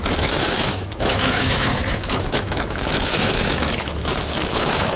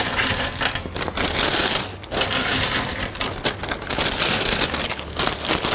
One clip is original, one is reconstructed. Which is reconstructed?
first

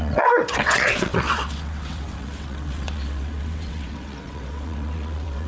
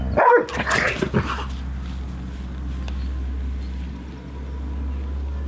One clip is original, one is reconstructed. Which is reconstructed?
first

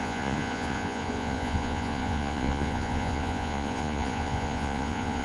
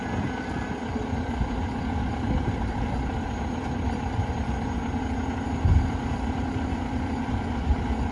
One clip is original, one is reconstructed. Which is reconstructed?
first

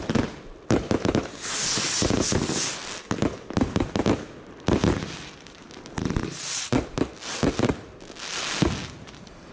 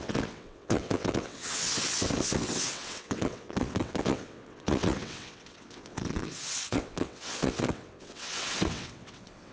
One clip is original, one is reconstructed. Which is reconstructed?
second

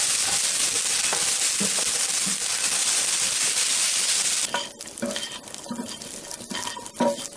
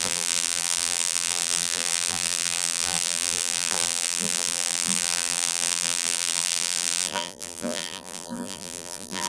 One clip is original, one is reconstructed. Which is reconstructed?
second